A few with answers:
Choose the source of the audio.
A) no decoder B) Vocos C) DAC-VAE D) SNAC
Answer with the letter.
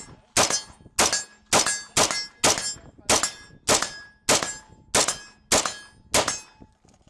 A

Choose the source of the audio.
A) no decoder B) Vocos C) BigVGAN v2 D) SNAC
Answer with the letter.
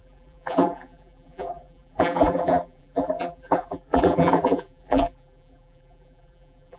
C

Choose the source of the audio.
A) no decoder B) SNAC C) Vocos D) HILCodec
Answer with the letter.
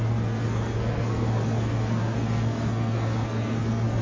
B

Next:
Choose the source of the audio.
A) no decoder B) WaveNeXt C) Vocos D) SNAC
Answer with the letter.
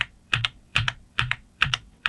B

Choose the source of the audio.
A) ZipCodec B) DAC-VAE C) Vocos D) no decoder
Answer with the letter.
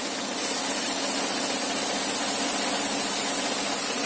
D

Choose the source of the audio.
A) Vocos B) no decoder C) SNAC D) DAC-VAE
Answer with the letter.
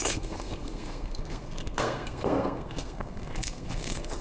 C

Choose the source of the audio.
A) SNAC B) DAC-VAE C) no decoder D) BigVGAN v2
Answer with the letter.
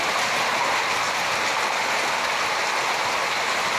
C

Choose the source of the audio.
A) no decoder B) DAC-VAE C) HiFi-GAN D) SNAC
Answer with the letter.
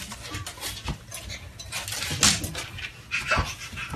A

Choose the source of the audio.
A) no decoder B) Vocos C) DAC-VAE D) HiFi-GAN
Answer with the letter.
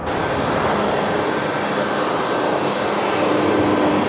A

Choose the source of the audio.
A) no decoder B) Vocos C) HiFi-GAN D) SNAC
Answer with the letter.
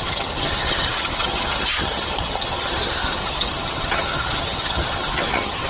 C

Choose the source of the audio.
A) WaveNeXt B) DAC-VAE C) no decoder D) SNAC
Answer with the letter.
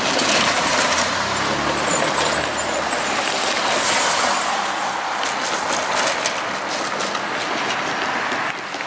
C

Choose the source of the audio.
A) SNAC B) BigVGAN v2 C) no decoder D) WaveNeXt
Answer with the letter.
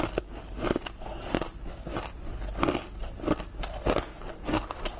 C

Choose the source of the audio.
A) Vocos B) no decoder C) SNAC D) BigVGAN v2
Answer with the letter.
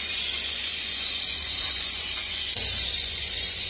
A